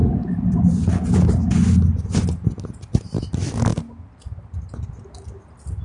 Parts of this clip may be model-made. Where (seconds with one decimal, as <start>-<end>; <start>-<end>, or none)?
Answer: none